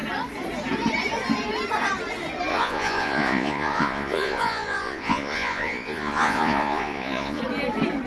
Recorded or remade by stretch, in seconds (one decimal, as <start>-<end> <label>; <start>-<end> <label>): 0.0-2.5 recorded; 2.5-7.4 remade; 7.4-8.1 recorded

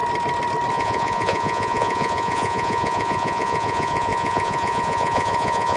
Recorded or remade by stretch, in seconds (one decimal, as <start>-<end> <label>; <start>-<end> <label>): 0.0-0.7 recorded; 0.7-5.8 remade

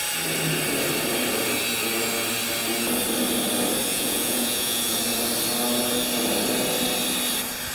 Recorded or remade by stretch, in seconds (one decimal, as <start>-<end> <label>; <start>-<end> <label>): 0.0-3.9 recorded; 3.9-5.0 remade; 5.0-7.7 recorded

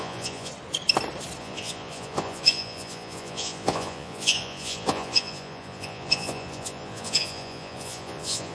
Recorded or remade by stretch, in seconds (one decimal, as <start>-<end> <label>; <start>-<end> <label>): 0.0-0.5 remade; 0.5-1.4 recorded; 1.4-8.5 remade

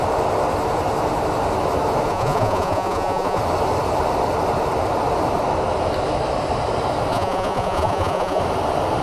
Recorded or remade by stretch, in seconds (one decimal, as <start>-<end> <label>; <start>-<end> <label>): 0.0-2.1 recorded; 2.1-3.4 remade; 3.4-7.1 recorded; 7.1-8.4 remade; 8.4-9.0 recorded

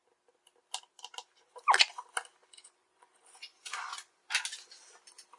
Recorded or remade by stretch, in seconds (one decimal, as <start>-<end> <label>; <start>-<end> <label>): 0.0-2.4 recorded; 2.4-4.2 remade; 4.2-5.4 recorded

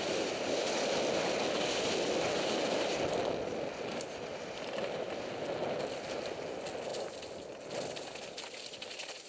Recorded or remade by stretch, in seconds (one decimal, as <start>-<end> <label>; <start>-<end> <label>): 0.0-9.3 recorded

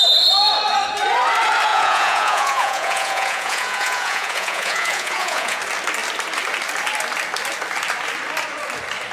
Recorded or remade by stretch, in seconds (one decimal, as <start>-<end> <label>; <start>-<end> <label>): 0.0-1.7 recorded; 1.7-5.6 remade; 5.6-9.1 recorded